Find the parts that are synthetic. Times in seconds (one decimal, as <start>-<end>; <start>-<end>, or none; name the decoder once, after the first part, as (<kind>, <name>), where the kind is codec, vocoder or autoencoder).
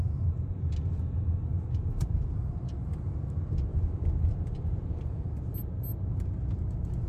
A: 1.5-3.1 (vocoder, BigVGAN v2); 3.7-5.4